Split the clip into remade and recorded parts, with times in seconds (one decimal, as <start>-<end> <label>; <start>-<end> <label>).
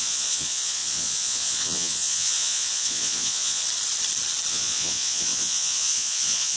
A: 0.0-3.6 remade; 3.6-4.5 recorded; 4.5-6.6 remade